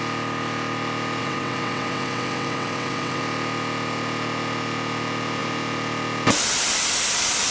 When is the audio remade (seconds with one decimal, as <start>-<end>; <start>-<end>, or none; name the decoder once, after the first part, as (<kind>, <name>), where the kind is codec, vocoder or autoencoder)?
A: 1.2-3.2 (vocoder, WaveNeXt)